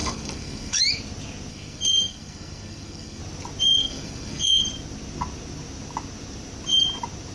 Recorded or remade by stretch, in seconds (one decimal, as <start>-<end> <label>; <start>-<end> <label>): 0.0-0.8 remade; 0.8-1.5 recorded; 1.5-3.2 remade; 3.2-3.8 recorded; 3.8-4.6 remade; 4.6-7.3 recorded